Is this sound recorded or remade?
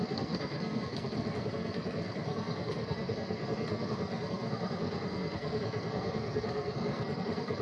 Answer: remade